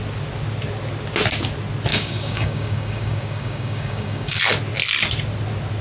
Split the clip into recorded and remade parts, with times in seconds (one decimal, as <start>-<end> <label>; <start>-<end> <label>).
0.0-1.9 recorded; 1.9-4.4 remade; 4.4-5.8 recorded